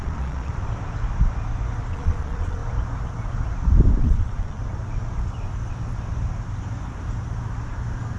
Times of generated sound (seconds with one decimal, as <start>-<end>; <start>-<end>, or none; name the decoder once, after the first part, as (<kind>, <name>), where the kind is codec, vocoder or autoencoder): 0.0-0.5 (vocoder, Vocos); 1.9-2.6; 4.0-4.6